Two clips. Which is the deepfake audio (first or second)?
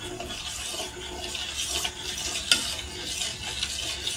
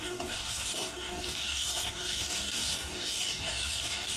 second